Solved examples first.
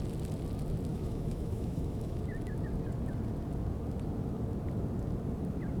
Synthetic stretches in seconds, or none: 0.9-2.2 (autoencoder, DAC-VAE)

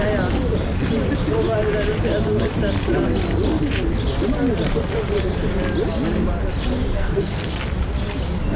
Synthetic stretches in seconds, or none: 6.9-7.5 (codec, SNAC)